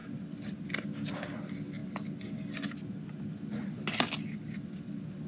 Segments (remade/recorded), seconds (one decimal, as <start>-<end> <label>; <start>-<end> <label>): 0.0-5.3 recorded